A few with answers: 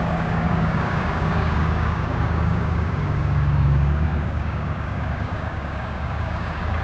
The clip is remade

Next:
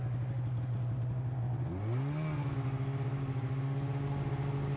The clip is recorded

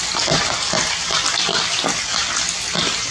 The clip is recorded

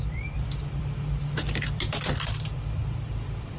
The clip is remade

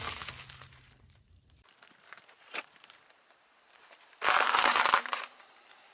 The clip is remade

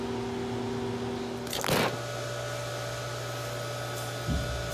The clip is recorded